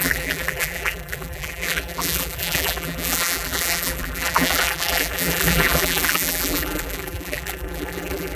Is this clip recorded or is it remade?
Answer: remade